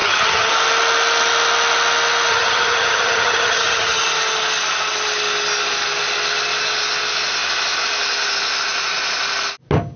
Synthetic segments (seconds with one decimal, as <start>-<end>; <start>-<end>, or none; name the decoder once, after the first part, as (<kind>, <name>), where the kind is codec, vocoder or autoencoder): 0.0-0.5 (vocoder, HiFi-GAN); 2.3-4.0